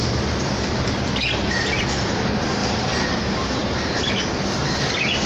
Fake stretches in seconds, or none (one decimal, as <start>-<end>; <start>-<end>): 2.6-4.1

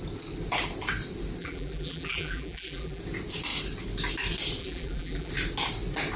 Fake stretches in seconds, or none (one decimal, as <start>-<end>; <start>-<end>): 1.4-3.0; 4.6-5.3

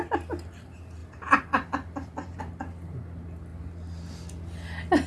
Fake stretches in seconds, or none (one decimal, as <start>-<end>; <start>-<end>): 1.0-2.4

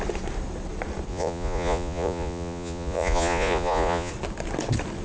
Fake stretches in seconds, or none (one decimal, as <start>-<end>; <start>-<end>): 1.1-4.1